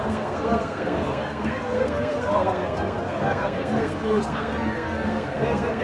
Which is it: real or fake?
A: fake